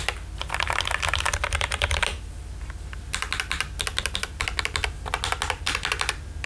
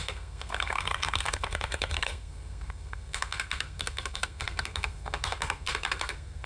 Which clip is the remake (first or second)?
second